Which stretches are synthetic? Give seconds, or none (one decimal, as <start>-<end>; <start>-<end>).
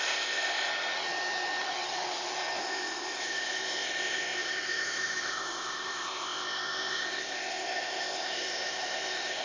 0.0-0.7; 2.6-9.4